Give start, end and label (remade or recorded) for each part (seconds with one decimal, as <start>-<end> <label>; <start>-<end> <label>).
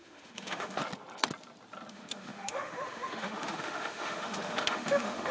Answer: 0.0-0.8 remade; 0.8-1.9 recorded; 1.9-5.3 remade